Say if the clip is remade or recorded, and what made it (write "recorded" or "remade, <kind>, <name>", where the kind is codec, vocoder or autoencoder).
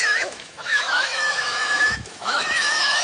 remade, autoencoder, DAC-VAE